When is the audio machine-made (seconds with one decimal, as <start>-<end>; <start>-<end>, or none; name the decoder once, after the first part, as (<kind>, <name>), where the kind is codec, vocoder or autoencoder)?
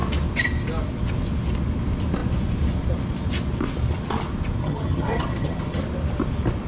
4.6-5.8 (vocoder, HiFi-GAN)